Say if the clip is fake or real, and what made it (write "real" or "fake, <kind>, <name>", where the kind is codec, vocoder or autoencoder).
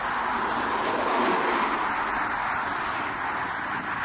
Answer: real